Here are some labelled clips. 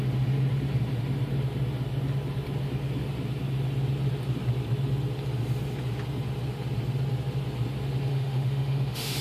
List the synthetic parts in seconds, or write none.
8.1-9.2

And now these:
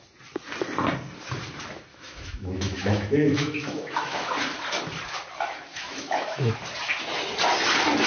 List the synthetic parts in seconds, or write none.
1.9-4.3; 5.7-6.5